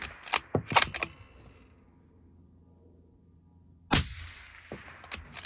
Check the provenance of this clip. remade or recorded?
recorded